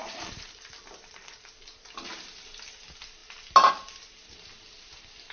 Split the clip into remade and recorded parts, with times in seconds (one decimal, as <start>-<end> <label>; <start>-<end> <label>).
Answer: 0.0-1.5 remade; 1.5-5.3 recorded